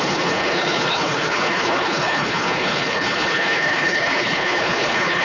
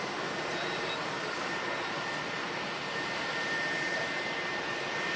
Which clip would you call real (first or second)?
second